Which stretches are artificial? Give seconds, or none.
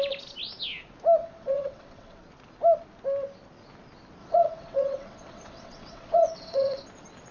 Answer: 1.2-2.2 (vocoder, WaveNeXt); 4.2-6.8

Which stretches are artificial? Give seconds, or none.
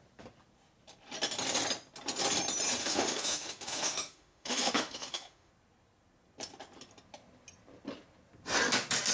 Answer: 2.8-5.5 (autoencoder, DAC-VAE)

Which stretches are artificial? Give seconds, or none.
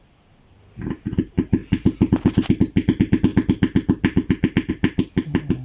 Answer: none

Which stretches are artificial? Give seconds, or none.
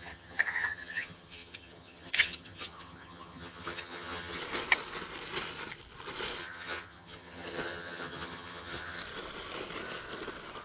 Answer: 0.0-4.4 (vocoder, HiFi-GAN); 6.4-9.0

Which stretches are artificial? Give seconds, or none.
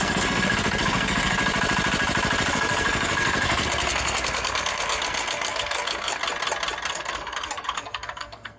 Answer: 0.0-1.4 (codec, SNAC); 2.5-6.2; 6.9-8.6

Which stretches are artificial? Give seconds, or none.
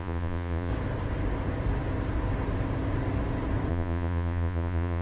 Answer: 0.0-0.7 (vocoder, Vocos); 3.7-5.0